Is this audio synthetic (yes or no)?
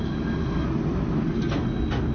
no